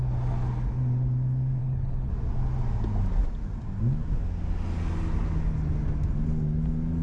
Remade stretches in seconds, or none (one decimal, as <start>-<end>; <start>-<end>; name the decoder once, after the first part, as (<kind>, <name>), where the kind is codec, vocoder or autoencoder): 1.6-2.1 (codec, HILCodec)